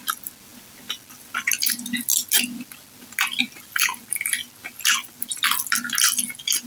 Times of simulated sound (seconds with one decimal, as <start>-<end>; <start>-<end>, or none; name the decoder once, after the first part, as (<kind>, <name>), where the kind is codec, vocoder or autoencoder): none